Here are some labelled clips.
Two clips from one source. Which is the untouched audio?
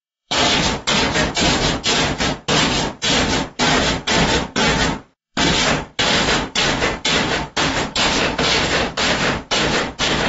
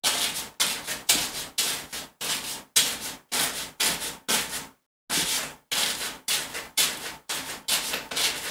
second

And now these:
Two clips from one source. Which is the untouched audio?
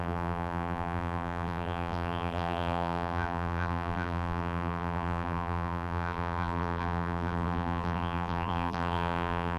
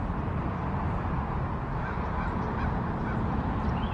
second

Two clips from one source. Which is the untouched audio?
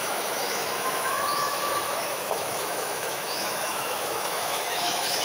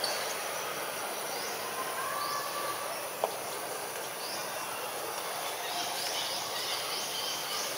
second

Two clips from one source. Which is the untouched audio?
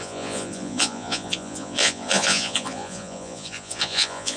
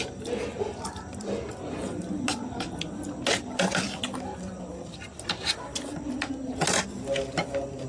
second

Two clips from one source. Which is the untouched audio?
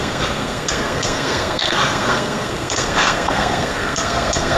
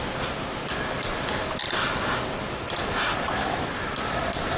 second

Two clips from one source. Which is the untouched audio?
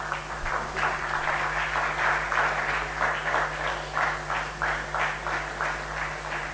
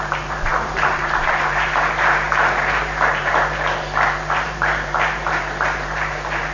first